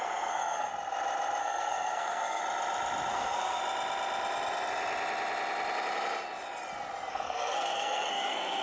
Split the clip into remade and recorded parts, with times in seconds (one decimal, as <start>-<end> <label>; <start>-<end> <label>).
0.0-0.7 remade; 0.7-1.4 recorded; 1.4-2.4 remade; 2.4-3.1 recorded; 3.1-3.6 remade; 3.6-7.1 recorded; 7.1-8.6 remade